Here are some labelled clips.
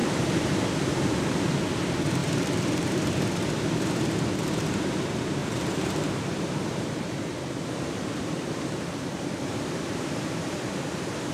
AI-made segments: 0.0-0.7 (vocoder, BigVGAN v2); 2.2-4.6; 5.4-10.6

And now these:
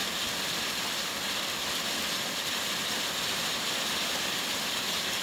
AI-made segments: 3.1-5.2 (vocoder, BigVGAN v2)

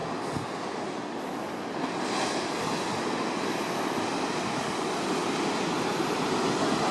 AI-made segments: none